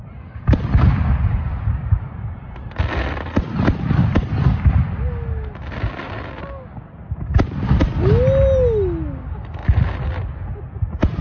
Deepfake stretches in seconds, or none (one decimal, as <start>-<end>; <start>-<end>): none